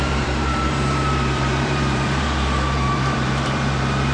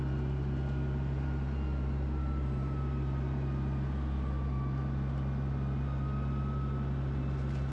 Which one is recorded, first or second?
second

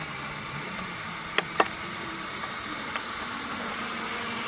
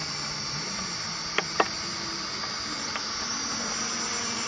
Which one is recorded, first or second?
second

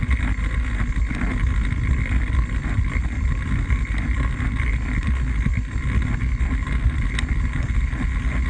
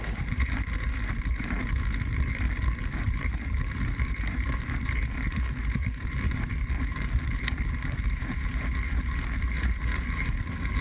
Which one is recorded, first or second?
first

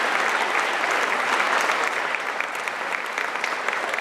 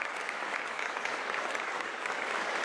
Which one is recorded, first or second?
first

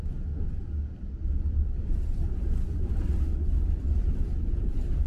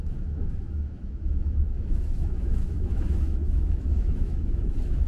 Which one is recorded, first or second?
first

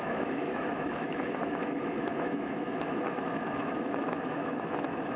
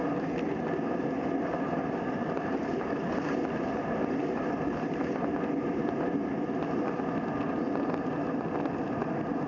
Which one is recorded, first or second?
second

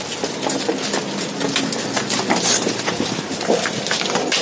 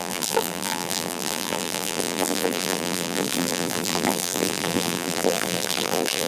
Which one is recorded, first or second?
first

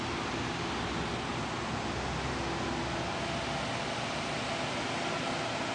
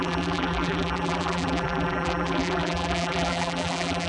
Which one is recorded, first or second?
first